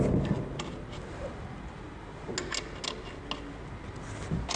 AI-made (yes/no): no